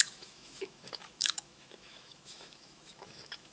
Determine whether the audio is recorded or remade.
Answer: remade